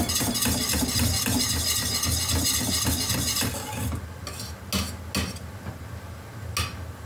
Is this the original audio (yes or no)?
yes